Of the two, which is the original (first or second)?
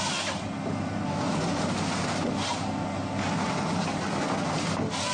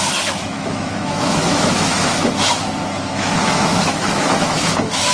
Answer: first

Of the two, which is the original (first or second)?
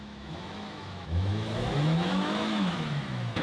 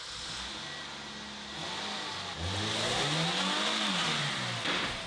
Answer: second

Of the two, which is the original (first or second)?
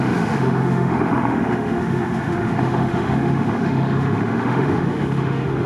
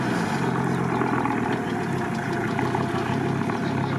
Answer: second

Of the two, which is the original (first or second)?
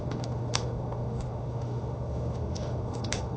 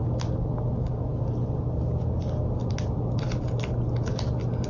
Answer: second